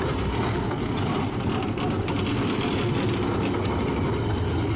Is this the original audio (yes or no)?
yes